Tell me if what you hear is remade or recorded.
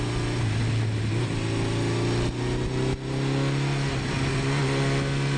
recorded